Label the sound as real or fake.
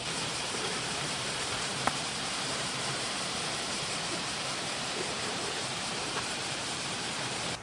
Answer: fake